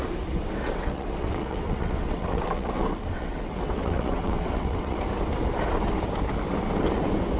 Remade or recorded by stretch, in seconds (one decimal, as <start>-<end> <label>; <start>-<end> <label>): 0.0-0.6 recorded; 0.6-5.0 remade; 5.0-7.4 recorded